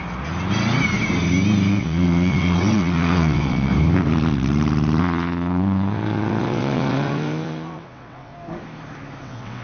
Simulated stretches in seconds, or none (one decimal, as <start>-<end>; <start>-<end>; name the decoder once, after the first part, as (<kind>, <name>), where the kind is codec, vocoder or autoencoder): 1.7-3.7 (vocoder, WaveNeXt); 5.0-8.3; 9.2-9.6